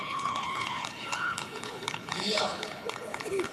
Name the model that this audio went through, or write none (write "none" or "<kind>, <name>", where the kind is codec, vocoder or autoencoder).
codec, HILCodec